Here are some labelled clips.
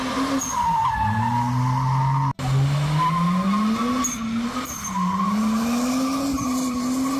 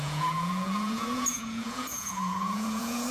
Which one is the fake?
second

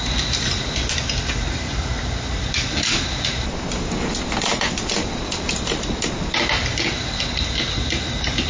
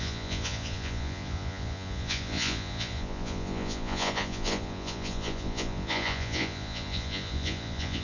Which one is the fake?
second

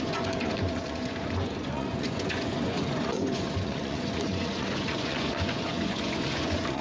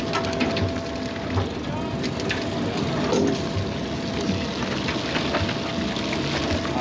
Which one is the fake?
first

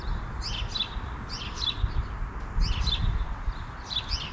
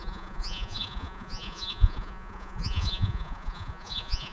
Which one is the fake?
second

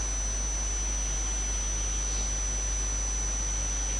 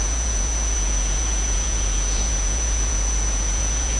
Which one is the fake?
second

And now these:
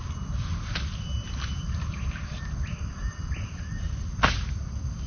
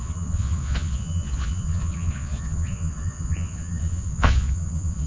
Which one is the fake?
second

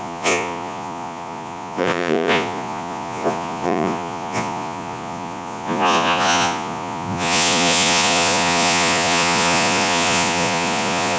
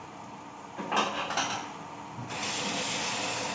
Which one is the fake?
first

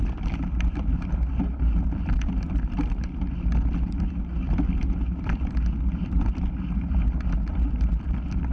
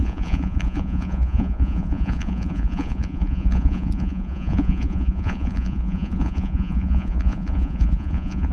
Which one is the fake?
second